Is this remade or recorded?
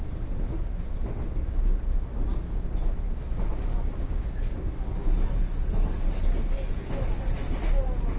recorded